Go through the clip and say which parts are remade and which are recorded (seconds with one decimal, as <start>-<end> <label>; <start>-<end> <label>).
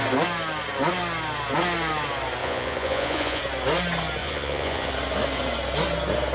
0.0-2.4 recorded; 2.4-3.4 remade; 3.4-4.2 recorded; 4.2-4.9 remade; 4.9-6.3 recorded